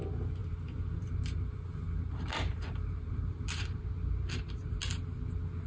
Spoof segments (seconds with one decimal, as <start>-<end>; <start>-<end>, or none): 0.4-3.8